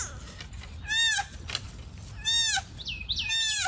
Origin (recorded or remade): recorded